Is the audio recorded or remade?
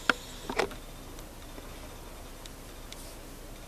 recorded